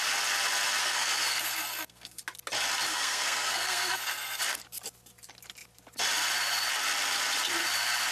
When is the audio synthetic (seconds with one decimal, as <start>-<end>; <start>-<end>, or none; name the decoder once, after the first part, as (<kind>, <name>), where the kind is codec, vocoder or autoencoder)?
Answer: 0.8-2.2 (codec, SNAC); 2.9-4.4